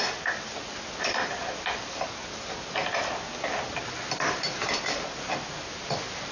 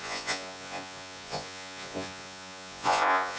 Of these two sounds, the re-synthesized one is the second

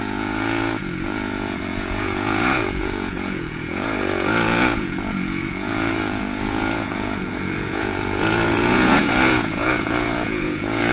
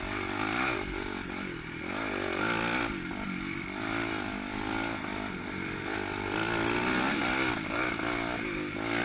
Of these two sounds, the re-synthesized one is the first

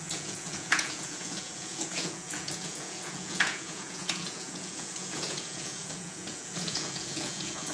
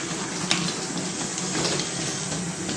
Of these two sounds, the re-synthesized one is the first